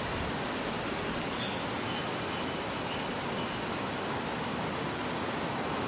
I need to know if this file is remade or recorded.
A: recorded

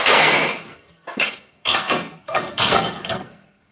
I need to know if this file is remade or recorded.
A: remade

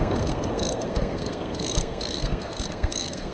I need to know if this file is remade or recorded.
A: remade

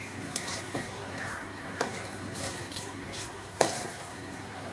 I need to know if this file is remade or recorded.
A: remade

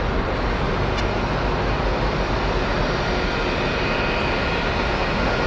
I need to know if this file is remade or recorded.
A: recorded